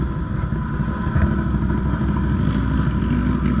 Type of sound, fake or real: real